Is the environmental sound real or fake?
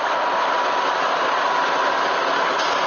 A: real